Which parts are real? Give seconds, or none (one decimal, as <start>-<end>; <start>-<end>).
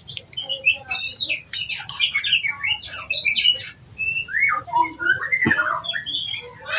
0.0-6.8